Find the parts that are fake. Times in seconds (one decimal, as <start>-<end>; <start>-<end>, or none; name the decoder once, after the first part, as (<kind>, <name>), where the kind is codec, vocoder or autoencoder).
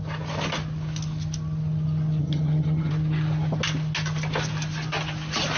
2.2-2.9 (vocoder, HiFi-GAN)